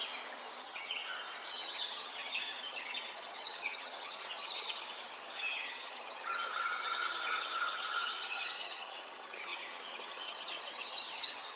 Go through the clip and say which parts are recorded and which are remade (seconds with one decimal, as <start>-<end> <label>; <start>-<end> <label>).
0.0-0.6 recorded; 0.6-1.0 remade; 1.0-1.5 recorded; 1.5-11.6 remade